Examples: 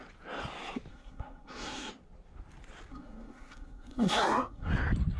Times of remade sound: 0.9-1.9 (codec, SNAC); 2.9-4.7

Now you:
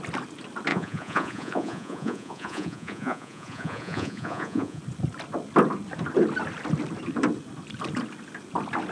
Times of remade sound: 0.7-4.8 (vocoder, Vocos)